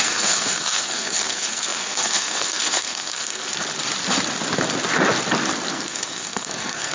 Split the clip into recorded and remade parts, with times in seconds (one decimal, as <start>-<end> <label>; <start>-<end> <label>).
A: 0.0-3.6 remade; 3.6-5.7 recorded; 5.7-6.9 remade